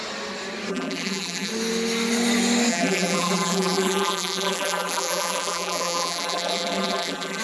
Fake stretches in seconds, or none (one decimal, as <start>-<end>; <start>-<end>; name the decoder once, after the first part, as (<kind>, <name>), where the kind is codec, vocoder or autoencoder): 0.7-1.5 (vocoder, BigVGAN v2); 2.7-7.4